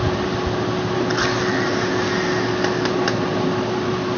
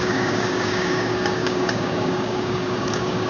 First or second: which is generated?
second